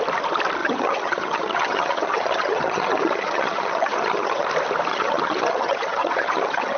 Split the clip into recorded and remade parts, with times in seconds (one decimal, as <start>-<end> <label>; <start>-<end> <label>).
0.0-0.6 recorded; 0.6-4.5 remade; 4.5-4.9 recorded; 4.9-6.8 remade